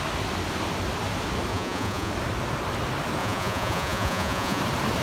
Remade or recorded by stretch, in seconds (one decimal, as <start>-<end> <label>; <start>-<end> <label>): 0.0-1.5 recorded; 1.5-2.1 remade; 2.1-3.2 recorded; 3.2-4.6 remade; 4.6-5.0 recorded